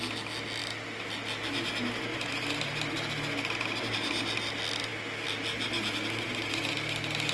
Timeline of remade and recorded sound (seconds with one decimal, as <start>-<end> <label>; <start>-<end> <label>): 0.0-2.1 recorded; 2.1-2.9 remade; 2.9-7.3 recorded